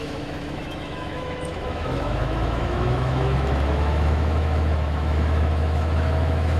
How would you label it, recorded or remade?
remade